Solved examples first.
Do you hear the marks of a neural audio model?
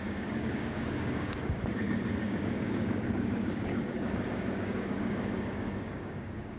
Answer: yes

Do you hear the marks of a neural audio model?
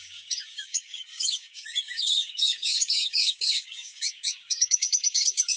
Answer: yes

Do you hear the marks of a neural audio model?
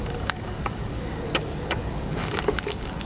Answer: yes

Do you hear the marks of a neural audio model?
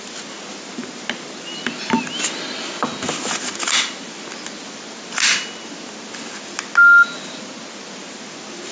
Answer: no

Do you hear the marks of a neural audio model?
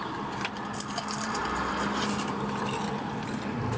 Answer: no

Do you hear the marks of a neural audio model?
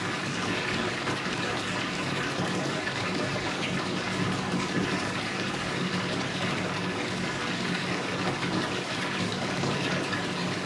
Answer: yes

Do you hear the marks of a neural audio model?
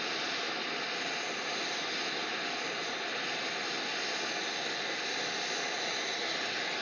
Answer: no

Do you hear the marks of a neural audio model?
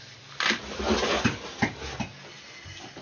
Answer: no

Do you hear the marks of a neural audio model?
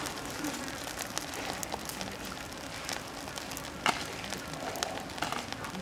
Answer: no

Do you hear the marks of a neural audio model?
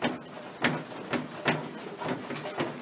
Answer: no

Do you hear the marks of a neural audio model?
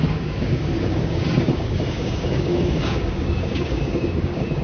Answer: yes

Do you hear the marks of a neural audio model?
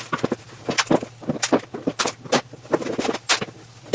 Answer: no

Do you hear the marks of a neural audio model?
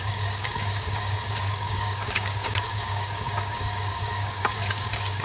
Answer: yes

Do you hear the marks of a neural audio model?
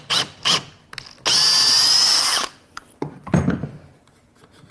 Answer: no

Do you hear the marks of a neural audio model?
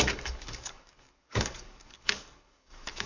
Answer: yes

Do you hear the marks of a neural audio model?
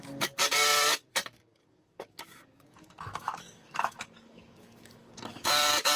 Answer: yes